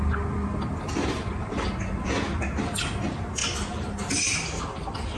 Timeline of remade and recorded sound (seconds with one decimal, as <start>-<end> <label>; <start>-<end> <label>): 0.0-5.2 recorded